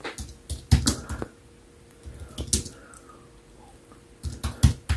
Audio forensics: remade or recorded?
recorded